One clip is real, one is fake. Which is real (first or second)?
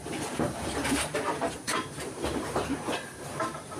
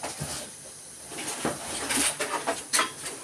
second